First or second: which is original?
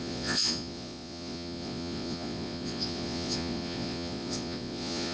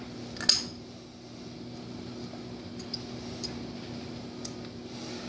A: second